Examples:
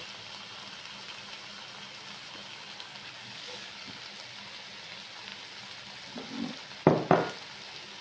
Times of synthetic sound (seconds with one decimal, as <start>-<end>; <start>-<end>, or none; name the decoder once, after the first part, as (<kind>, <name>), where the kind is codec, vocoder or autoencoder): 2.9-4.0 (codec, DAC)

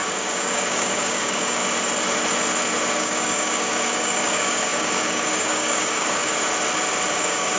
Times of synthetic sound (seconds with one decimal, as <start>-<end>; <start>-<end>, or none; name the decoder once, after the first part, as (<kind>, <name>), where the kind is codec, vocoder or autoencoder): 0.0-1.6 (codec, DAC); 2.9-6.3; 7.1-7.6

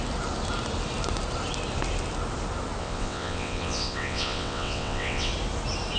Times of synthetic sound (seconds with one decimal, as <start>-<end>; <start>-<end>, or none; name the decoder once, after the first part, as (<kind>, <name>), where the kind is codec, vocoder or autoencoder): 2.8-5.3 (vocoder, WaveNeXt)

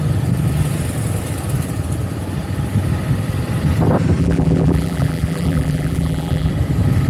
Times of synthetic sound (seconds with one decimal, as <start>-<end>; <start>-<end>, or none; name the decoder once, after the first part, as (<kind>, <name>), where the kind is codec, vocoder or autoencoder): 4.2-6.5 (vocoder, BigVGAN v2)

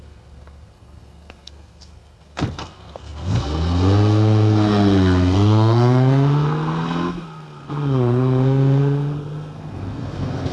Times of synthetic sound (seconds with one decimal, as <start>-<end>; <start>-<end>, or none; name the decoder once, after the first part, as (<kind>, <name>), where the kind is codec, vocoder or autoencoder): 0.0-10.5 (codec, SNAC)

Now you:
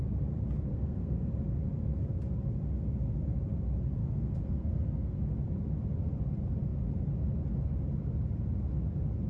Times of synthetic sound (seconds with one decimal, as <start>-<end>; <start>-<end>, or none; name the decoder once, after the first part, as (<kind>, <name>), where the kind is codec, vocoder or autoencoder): 0.7-1.3 (codec, SNAC); 4.0-5.2